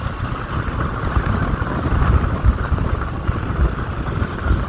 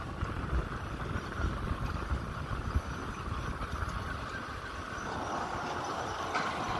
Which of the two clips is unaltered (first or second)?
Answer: second